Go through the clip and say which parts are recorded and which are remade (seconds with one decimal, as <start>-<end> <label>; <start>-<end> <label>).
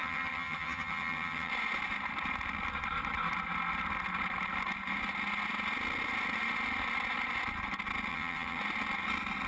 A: 0.0-1.5 remade; 1.5-8.1 recorded; 8.1-8.6 remade; 8.6-9.5 recorded